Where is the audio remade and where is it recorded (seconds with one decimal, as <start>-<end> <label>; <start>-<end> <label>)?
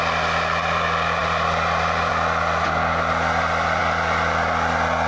0.0-5.1 recorded